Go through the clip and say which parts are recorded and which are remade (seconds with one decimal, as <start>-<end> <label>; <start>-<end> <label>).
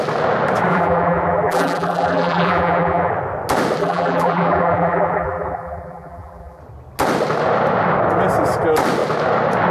0.0-0.7 recorded; 0.7-3.1 remade; 3.1-3.8 recorded; 3.8-6.6 remade; 6.6-9.7 recorded